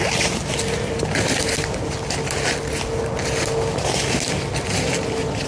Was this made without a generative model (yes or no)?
yes